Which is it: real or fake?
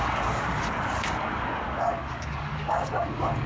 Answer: fake